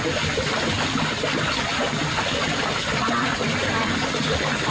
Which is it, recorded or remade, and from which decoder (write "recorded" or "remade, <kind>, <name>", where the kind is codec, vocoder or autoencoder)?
recorded